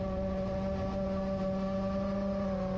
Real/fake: real